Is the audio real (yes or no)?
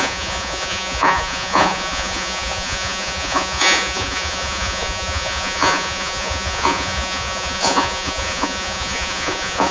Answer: no